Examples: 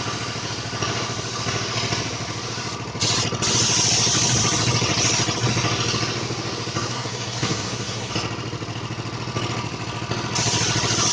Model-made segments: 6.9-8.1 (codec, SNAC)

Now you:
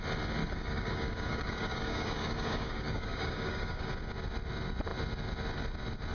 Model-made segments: 0.4-3.9 (codec, DAC)